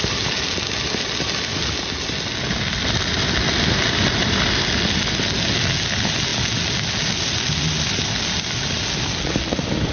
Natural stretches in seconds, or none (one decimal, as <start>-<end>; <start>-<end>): 0.0-9.9